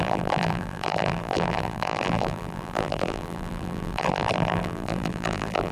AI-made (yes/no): yes